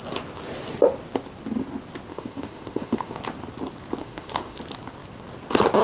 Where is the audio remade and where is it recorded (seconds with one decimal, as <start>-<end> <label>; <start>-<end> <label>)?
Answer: 0.0-2.1 recorded; 2.1-3.2 remade; 3.2-4.0 recorded; 4.0-4.6 remade; 4.6-5.8 recorded